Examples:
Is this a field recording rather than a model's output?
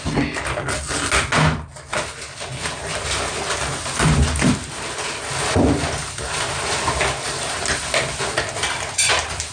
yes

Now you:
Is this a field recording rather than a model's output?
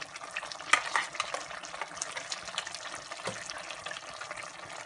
yes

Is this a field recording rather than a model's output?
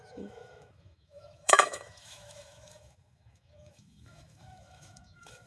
no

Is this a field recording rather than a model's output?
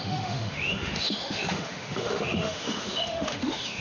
no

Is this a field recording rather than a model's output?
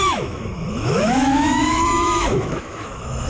no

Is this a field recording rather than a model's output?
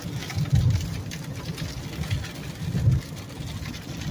yes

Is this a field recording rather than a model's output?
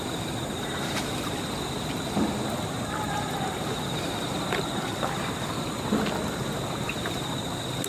yes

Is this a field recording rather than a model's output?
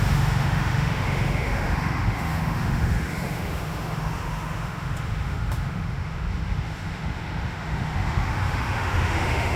no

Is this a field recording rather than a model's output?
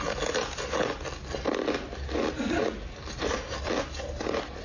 yes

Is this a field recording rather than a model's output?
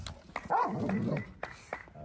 yes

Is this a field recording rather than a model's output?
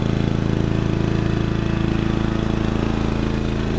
yes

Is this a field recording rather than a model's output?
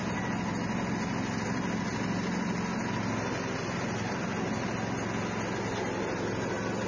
yes